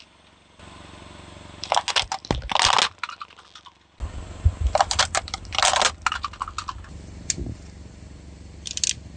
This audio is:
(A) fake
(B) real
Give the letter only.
B